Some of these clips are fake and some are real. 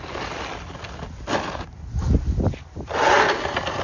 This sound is real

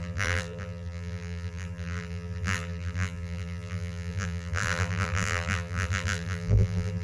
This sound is fake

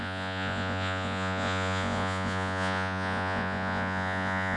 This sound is fake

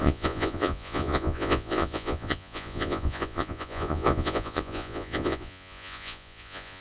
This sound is fake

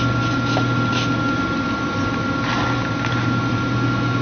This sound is real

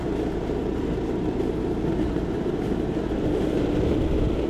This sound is real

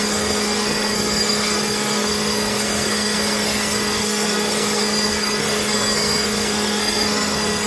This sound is fake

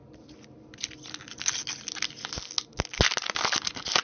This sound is real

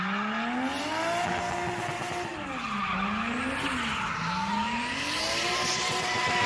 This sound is real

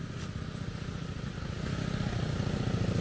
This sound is real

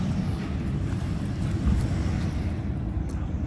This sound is real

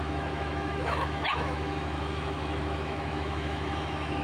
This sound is fake